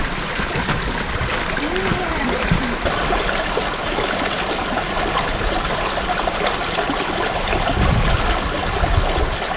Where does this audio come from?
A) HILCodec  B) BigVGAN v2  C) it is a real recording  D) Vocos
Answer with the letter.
C